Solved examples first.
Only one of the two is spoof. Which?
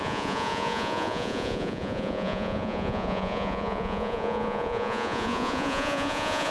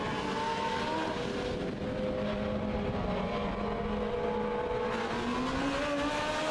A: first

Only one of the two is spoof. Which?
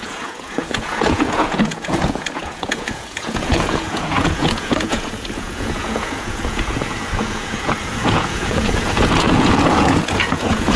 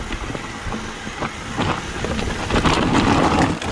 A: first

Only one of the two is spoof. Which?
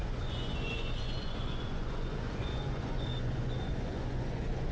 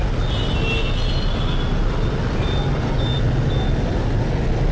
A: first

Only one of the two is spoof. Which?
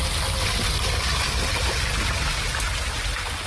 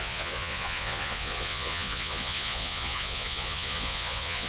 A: second